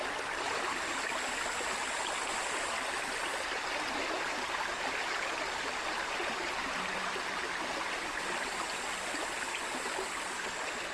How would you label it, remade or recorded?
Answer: recorded